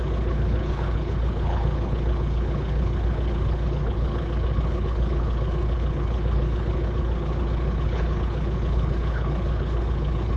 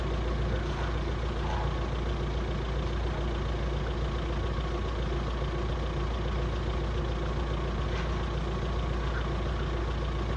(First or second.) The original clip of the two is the second